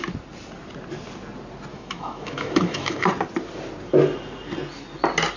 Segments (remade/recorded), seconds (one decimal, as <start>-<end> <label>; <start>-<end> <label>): 0.0-1.7 recorded; 1.7-3.1 remade; 3.1-5.4 recorded